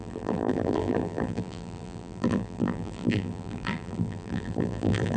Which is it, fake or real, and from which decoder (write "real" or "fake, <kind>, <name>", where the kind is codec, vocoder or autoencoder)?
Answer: fake, vocoder, BigVGAN v2